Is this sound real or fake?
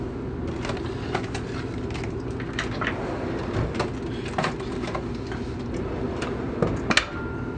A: real